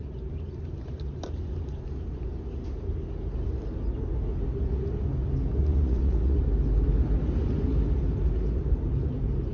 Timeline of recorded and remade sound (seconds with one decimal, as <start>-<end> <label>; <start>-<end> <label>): 0.0-5.6 recorded; 5.6-6.4 remade; 6.4-9.5 recorded